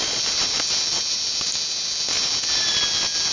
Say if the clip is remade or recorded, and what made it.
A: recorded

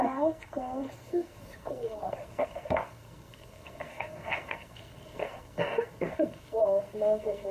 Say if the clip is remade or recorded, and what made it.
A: remade, codec, SNAC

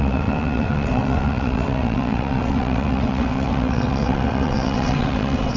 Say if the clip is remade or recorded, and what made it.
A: remade, vocoder, WaveNeXt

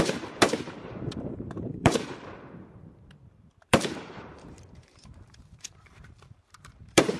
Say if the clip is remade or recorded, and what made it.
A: remade, vocoder, BigVGAN v2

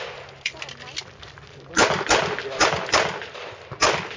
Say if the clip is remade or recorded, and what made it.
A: recorded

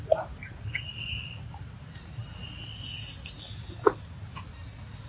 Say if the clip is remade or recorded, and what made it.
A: recorded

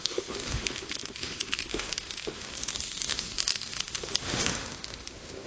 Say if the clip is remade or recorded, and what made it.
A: remade, autoencoder, DAC-VAE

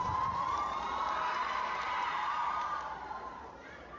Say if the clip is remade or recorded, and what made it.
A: remade, vocoder, BigVGAN v2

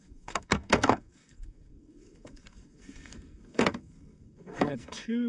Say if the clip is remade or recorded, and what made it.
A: remade, codec, SNAC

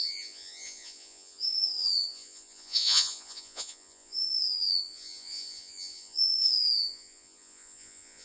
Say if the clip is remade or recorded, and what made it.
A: remade, vocoder, Vocos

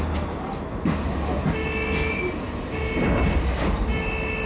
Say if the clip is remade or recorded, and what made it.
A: recorded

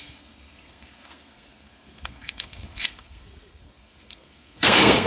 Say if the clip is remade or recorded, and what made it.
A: remade, codec, SNAC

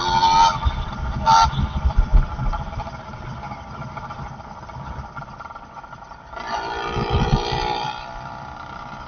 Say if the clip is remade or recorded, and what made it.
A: recorded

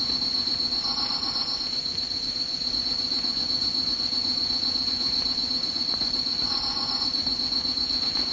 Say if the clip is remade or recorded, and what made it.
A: remade, vocoder, Vocos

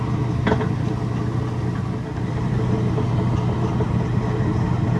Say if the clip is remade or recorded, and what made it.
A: recorded